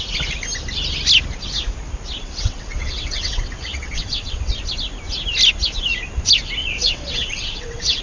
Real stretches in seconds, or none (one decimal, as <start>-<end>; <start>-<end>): 0.0-2.2; 4.5-6.6